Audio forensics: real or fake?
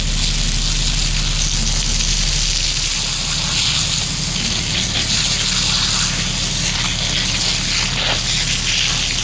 real